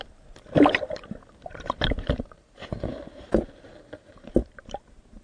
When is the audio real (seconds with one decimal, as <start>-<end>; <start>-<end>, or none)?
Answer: 0.0-1.2; 4.3-5.2